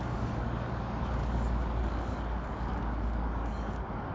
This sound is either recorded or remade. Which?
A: remade